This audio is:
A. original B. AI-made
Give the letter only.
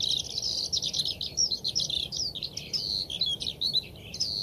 A